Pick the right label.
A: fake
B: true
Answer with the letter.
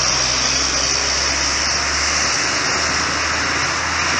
B